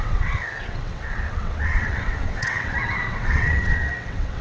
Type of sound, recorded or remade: remade